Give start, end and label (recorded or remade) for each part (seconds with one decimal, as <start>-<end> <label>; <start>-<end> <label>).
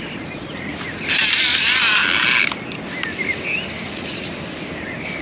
0.0-0.7 remade; 0.7-3.8 recorded; 3.8-4.3 remade; 4.3-5.2 recorded